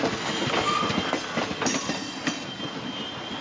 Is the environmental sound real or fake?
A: real